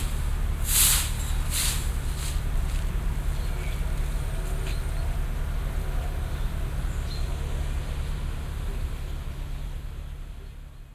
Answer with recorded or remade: recorded